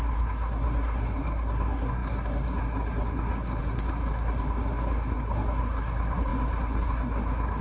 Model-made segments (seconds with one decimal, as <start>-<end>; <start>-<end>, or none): 0.0-7.6